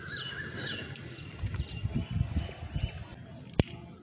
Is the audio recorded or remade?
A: recorded